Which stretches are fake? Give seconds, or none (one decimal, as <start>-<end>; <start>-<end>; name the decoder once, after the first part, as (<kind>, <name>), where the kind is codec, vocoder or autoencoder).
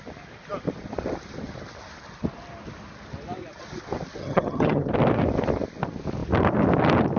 4.2-4.9 (vocoder, HiFi-GAN)